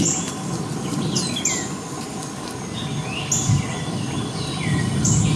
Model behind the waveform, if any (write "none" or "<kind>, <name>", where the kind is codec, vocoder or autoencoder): none